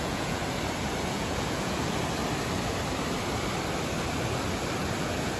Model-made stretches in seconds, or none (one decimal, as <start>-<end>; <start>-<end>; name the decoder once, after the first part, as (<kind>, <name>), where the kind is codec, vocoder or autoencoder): 0.0-0.4 (vocoder, Vocos); 1.1-2.0; 5.0-5.4

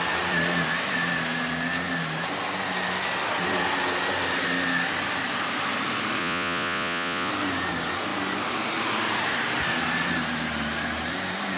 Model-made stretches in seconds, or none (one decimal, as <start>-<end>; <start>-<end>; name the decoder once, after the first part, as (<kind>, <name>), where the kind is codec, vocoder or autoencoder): 6.2-7.3 (vocoder, Vocos)